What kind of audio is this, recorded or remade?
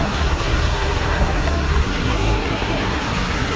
remade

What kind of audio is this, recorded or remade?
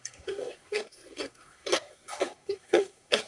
remade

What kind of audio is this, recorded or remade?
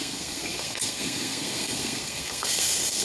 remade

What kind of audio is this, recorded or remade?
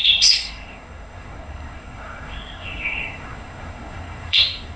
remade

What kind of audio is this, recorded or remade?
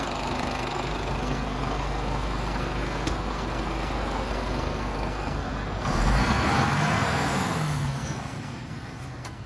remade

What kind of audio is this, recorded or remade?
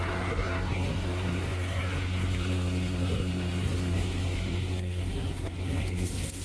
remade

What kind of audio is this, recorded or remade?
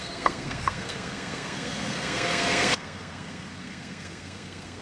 remade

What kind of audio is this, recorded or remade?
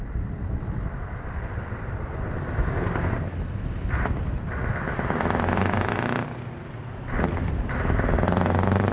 recorded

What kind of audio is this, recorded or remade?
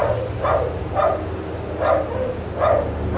recorded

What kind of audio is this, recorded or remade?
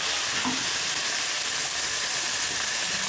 recorded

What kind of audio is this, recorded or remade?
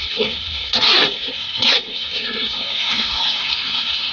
remade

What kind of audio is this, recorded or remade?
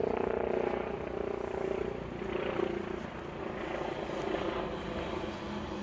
recorded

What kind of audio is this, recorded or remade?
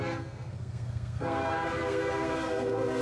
remade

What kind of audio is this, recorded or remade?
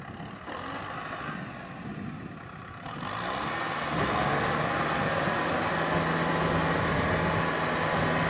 recorded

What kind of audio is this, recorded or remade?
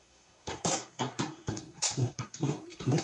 remade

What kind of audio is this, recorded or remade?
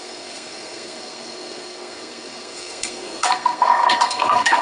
remade